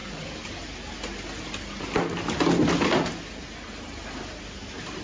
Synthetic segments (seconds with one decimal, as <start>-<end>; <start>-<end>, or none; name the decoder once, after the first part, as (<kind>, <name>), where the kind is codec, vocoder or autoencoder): none